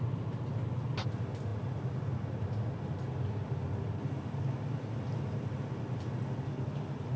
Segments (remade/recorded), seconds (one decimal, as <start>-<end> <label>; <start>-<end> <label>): 0.0-7.2 recorded